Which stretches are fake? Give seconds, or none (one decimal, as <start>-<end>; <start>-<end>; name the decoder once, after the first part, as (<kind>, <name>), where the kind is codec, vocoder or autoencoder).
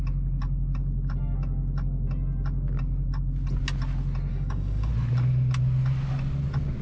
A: 4.3-4.9 (codec, DAC)